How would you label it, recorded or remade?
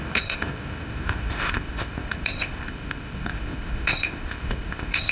remade